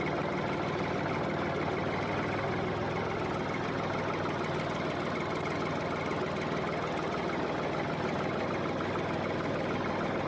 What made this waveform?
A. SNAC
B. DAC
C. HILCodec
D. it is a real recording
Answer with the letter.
D